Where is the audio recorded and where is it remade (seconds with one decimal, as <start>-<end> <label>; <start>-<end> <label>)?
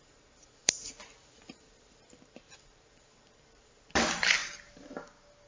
0.0-4.4 remade; 4.4-5.5 recorded